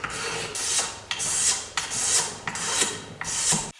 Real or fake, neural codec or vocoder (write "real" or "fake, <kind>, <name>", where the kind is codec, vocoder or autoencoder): real